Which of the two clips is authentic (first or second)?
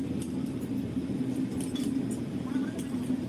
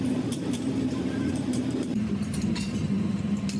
first